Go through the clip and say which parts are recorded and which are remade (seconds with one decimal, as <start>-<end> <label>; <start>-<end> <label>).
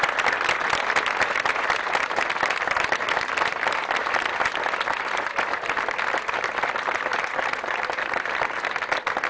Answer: 0.0-9.3 recorded